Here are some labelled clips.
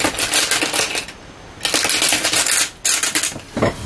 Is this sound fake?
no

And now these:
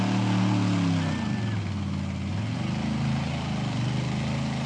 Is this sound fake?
no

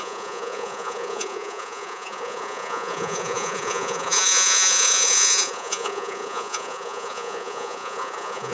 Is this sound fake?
yes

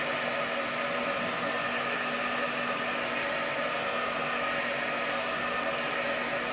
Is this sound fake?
no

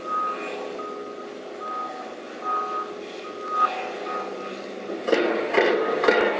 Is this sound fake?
no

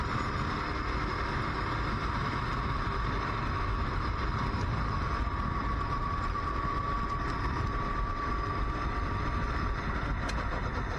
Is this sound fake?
no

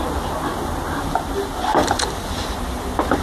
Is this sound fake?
no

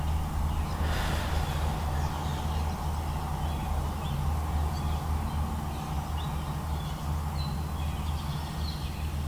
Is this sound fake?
no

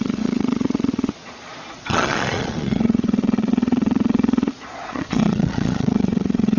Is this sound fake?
yes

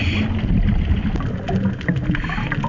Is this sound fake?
no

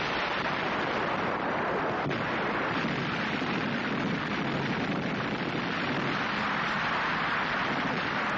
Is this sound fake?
no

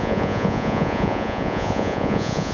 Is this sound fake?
yes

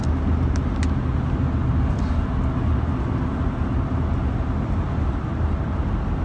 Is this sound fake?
no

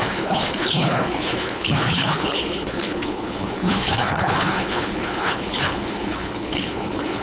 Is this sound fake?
yes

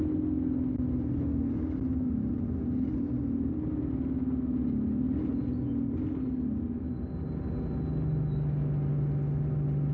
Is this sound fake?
no